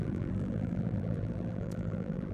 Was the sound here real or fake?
fake